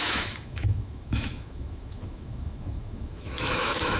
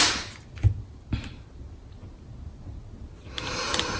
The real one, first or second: second